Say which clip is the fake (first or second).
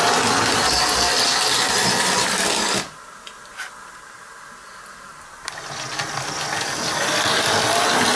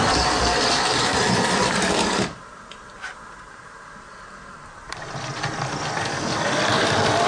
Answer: second